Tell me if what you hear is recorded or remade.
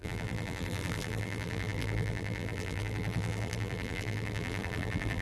remade